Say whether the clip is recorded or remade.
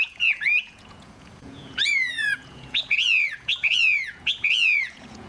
remade